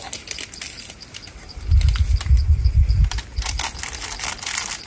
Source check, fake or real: real